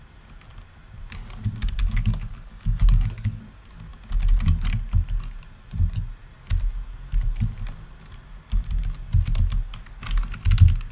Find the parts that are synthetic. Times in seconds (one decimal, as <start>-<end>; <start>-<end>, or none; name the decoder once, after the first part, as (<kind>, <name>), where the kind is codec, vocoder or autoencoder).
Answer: 1.6-3.4 (codec, DAC)